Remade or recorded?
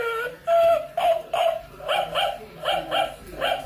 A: recorded